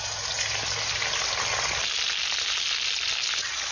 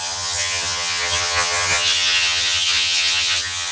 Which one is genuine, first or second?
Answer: first